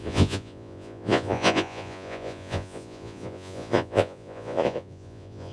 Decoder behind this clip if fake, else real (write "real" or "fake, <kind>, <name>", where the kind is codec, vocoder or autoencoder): fake, vocoder, Vocos